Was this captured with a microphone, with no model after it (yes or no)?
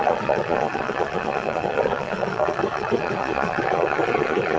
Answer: no